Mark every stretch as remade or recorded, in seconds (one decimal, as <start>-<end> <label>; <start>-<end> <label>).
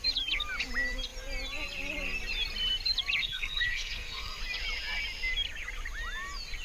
0.0-3.2 recorded; 3.2-4.4 remade; 4.4-6.6 recorded